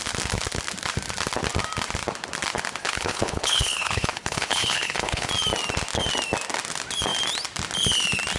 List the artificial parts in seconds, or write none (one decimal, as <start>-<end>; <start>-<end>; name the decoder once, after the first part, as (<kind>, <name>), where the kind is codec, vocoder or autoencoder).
2.8-5.3 (codec, HILCodec)